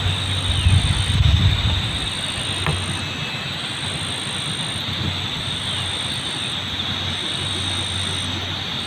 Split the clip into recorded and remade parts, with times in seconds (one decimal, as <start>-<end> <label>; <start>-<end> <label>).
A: 0.0-8.9 recorded